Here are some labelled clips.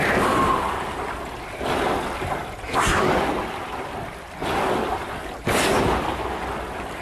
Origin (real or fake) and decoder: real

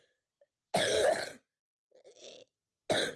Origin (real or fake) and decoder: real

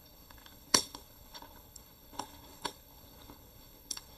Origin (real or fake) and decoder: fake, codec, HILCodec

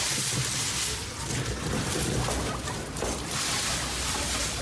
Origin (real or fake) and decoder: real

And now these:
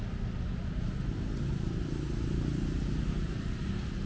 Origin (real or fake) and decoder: real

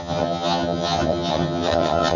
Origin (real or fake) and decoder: fake, vocoder, HiFi-GAN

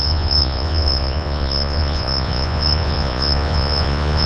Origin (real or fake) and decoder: fake, vocoder, Vocos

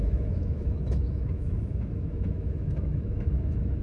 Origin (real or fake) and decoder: fake, autoencoder, DAC-VAE